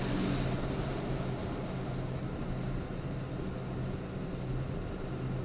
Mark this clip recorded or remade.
recorded